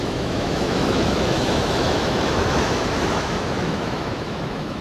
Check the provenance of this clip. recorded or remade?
remade